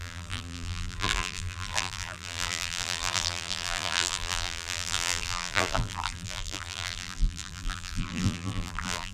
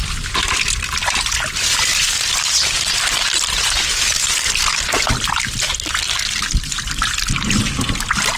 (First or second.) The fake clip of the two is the first